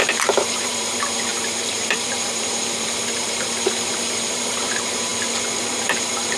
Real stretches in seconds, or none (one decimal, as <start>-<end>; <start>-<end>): 5.1-5.6